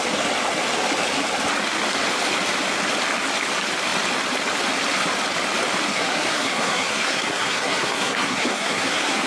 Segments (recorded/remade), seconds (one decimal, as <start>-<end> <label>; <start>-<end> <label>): 0.0-5.9 recorded; 5.9-9.3 remade